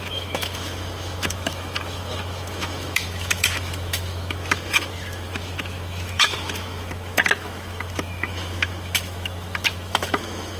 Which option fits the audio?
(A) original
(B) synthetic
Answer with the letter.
B